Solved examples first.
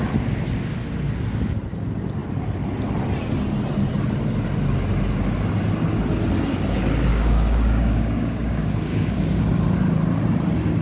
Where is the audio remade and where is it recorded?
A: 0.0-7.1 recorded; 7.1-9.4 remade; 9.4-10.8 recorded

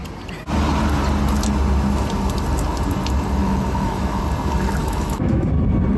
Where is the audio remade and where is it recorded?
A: 0.0-3.4 recorded; 3.4-4.2 remade; 4.2-4.8 recorded; 4.8-5.5 remade; 5.5-6.0 recorded

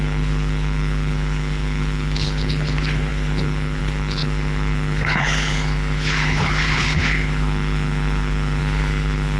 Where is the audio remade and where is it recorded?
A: 0.0-9.4 remade

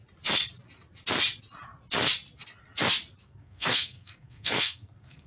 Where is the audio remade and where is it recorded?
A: 0.0-3.2 recorded; 3.2-5.3 remade

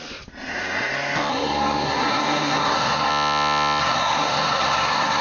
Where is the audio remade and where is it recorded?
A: 0.0-1.3 recorded; 1.3-3.1 remade; 3.1-3.8 recorded; 3.8-5.2 remade